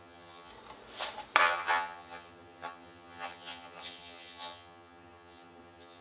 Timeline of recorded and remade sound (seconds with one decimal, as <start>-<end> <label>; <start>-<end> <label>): 0.0-0.5 remade; 0.5-1.4 recorded; 1.4-6.0 remade